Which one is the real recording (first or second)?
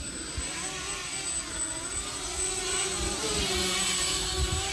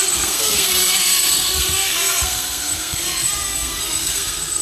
first